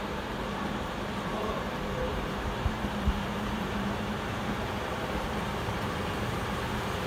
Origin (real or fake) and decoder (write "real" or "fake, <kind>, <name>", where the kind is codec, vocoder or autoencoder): fake, vocoder, BigVGAN v2